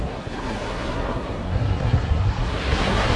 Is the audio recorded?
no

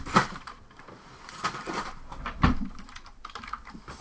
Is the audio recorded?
yes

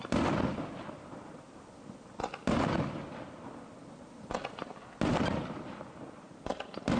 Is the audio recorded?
yes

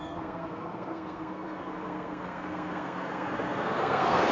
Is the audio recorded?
no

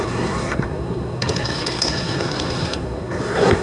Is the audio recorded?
no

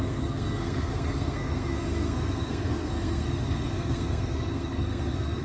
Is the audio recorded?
no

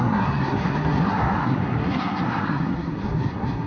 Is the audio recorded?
no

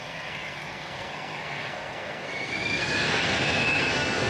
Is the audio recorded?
no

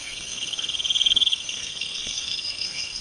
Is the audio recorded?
no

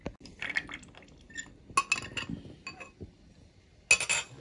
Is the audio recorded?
yes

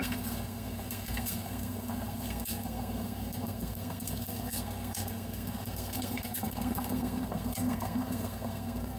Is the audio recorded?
no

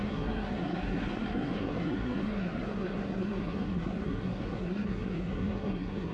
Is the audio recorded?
no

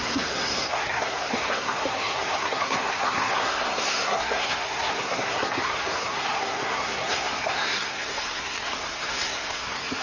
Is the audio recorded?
no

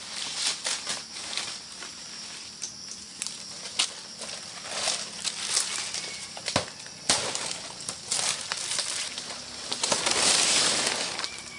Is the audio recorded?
yes